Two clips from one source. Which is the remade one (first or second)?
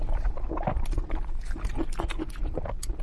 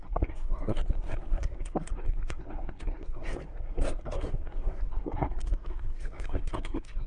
second